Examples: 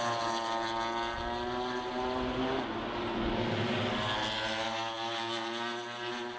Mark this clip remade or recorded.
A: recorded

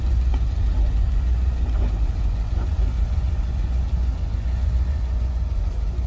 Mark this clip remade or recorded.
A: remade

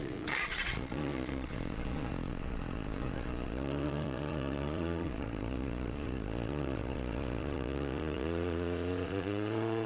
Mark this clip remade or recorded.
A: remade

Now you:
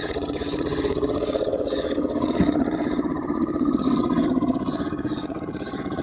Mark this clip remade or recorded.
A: remade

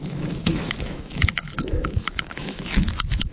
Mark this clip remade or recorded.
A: remade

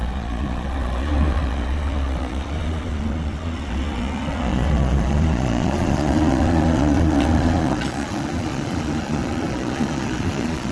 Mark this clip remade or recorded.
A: remade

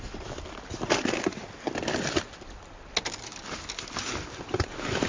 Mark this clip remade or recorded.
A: recorded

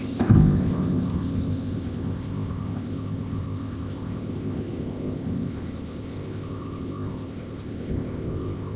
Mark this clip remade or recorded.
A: remade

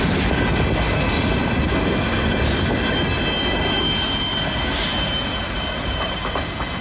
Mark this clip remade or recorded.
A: recorded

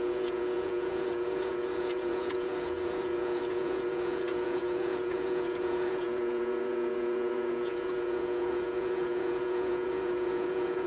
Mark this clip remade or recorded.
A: remade